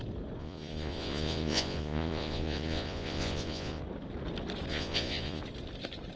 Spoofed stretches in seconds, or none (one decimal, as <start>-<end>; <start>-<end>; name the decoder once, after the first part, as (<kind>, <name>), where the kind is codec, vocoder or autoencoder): 0.4-3.8 (vocoder, Vocos); 4.7-5.4